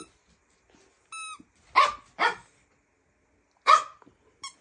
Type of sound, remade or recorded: recorded